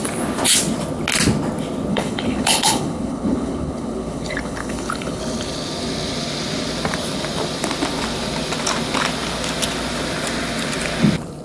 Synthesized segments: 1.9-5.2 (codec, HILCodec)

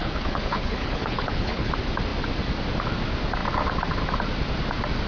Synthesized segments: 0.0-1.7 (codec, HILCodec)

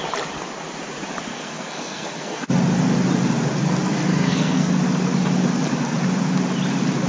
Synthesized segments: 1.3-2.4 (codec, SNAC); 4.1-4.7

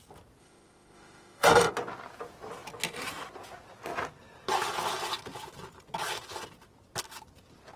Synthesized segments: 0.4-1.7 (autoencoder, DAC-VAE)